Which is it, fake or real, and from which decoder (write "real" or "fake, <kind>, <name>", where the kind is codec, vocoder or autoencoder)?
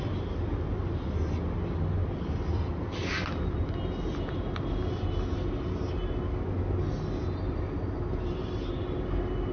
real